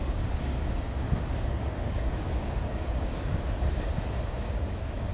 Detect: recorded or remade remade